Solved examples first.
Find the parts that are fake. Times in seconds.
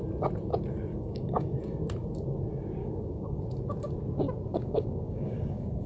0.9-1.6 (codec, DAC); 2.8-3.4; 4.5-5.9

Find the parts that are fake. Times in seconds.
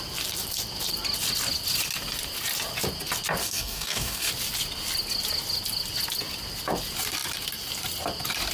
3.4-4.3 (codec, DAC)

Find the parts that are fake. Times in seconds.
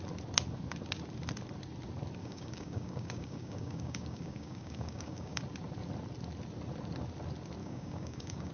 2.2-5.4 (codec, DAC); 7.6-8.5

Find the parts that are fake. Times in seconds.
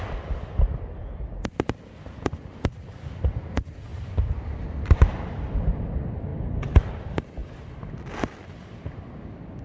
none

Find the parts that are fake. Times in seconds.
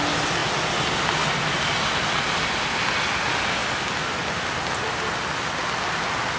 none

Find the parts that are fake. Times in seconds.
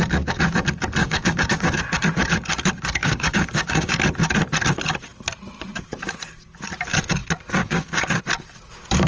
1.0-1.8 (codec, DAC); 3.0-3.9; 7.6-8.2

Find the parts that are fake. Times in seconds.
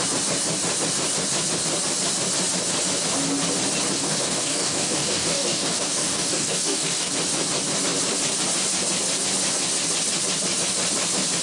4.0-7.1 (codec, DAC)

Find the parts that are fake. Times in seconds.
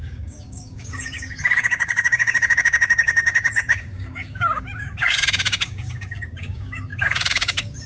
0.0-7.9 (codec, DAC)